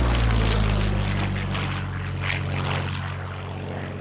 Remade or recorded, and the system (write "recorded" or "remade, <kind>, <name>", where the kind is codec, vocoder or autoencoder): recorded